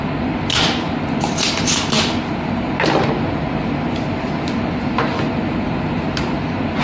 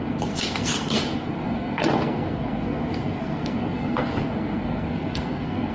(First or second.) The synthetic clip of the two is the second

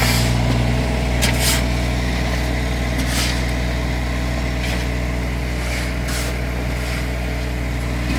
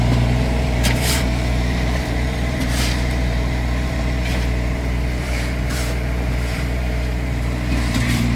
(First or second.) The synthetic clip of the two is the second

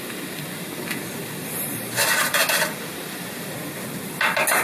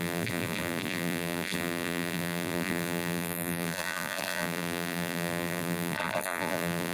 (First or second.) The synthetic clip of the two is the second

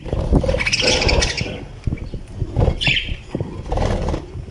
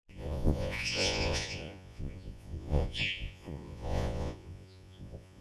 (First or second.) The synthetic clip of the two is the second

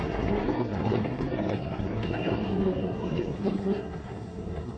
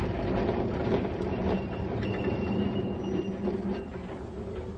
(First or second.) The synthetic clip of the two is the first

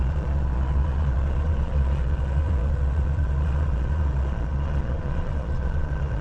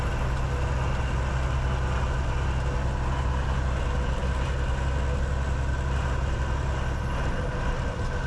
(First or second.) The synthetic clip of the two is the first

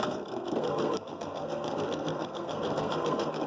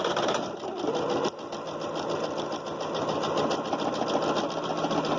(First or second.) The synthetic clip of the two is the first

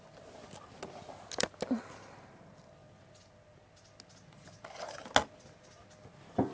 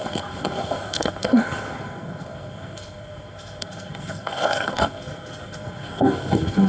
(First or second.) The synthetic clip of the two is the second